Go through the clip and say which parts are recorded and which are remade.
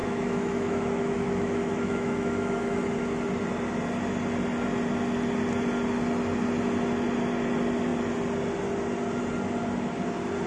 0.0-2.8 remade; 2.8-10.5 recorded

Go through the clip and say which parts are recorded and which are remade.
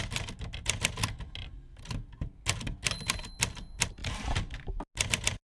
0.0-5.6 recorded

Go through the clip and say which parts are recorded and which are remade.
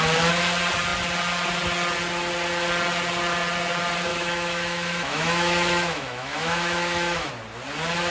0.0-4.1 recorded; 4.1-7.3 remade; 7.3-8.1 recorded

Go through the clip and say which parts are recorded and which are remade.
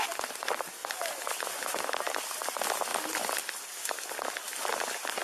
0.0-5.2 recorded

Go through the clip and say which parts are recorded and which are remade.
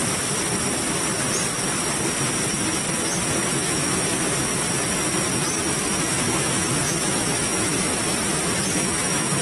0.0-3.5 recorded; 3.5-4.5 remade; 4.5-6.1 recorded; 6.1-7.9 remade; 7.9-8.7 recorded; 8.7-9.4 remade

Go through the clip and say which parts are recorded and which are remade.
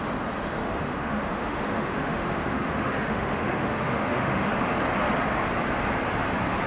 0.0-0.6 recorded; 0.6-4.5 remade; 4.5-6.7 recorded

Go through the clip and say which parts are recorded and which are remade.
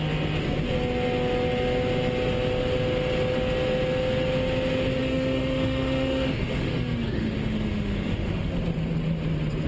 0.0-5.0 recorded; 5.0-8.5 remade; 8.5-9.7 recorded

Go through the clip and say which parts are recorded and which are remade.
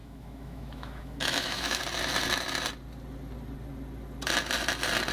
0.0-1.8 remade; 1.8-5.1 recorded